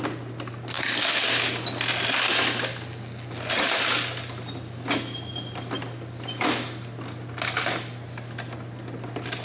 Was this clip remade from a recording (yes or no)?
no